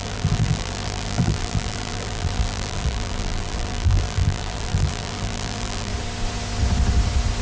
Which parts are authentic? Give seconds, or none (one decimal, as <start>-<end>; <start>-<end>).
5.9-7.4

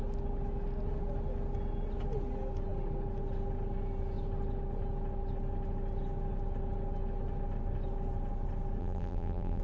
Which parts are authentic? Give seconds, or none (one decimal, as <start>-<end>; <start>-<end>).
0.0-8.8

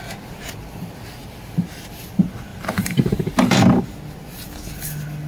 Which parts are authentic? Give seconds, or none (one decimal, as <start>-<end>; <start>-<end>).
0.0-1.2; 2.0-2.5; 3.8-5.3

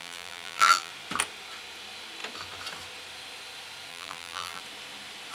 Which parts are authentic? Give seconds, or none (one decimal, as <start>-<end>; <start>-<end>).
0.9-3.9; 4.6-5.3

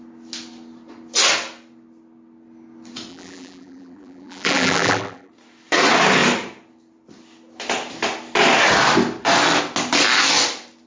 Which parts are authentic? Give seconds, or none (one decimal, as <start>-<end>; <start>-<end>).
0.0-3.1; 5.3-10.9

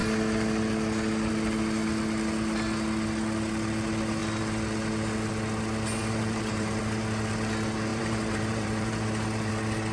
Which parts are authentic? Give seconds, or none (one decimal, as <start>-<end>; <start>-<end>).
0.0-6.0; 6.8-7.9; 9.5-9.9